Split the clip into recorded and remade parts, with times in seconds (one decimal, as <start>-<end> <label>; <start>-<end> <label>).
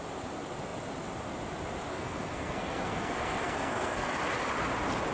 0.0-1.9 recorded; 1.9-4.1 remade; 4.1-5.1 recorded